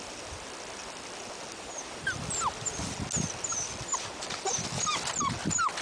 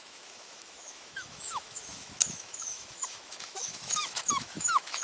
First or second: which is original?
first